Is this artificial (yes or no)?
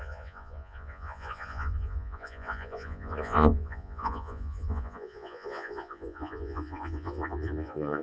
yes